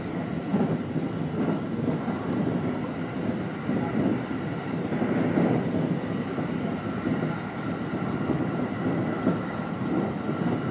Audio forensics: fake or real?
real